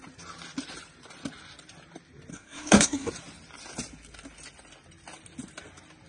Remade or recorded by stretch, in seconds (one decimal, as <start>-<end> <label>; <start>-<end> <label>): 0.0-2.3 recorded; 2.3-3.1 remade; 3.1-6.1 recorded